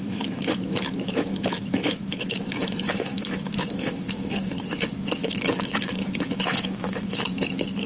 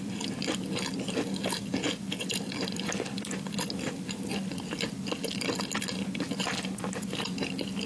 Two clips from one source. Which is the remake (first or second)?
first